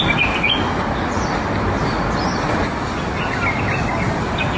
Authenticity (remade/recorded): recorded